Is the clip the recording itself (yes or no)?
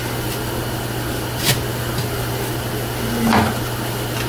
yes